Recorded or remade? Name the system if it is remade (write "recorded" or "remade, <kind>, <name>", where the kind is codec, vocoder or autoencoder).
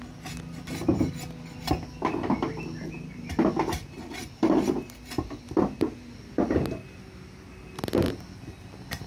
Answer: recorded